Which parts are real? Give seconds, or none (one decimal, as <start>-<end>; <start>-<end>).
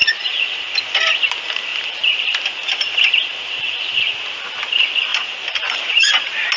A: 0.8-1.7; 4.1-5.1; 5.8-6.6